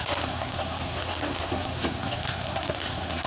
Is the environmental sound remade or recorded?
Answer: remade